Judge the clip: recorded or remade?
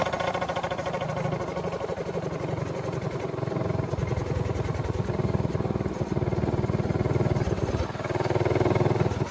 recorded